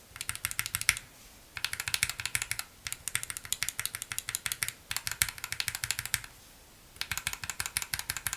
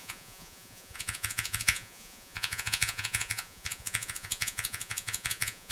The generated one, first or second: second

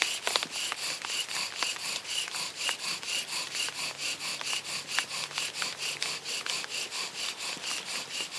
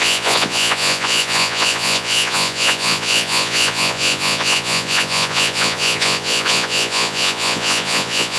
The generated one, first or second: second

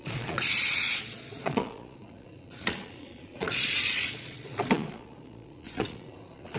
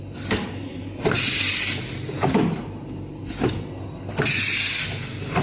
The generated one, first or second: first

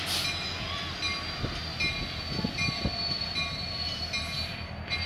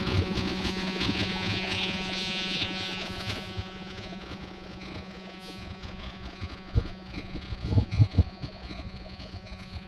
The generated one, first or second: second